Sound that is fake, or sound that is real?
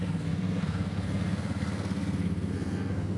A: fake